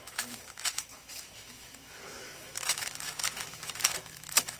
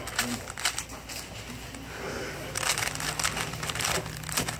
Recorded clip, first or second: second